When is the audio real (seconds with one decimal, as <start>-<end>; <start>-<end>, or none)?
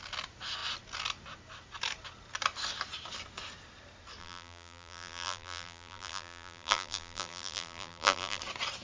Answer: 0.0-4.2; 8.4-8.8